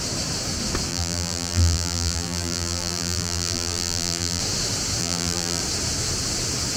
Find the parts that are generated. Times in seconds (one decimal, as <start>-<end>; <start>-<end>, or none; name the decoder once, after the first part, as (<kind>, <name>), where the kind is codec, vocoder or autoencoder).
0.9-4.4 (vocoder, BigVGAN v2); 5.0-5.6